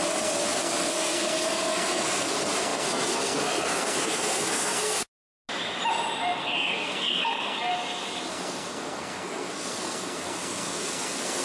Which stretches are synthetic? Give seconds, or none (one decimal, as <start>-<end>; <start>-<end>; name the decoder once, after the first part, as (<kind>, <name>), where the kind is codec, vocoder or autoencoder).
0.0-5.0 (codec, SNAC); 6.4-7.7; 8.3-11.4